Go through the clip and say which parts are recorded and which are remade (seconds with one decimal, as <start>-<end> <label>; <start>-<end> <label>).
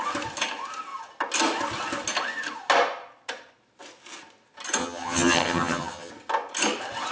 0.0-4.8 recorded; 4.8-6.1 remade; 6.1-7.1 recorded